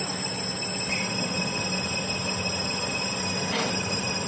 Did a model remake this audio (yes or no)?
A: no